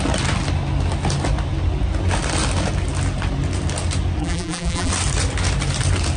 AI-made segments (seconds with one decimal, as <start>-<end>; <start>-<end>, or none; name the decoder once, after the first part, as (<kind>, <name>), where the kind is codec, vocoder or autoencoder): 4.2-4.9 (vocoder, BigVGAN v2)